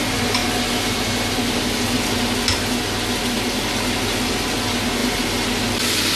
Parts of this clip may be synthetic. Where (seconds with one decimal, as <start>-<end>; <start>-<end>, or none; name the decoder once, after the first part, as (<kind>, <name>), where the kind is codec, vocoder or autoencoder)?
none